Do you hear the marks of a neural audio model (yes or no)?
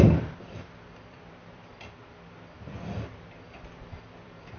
yes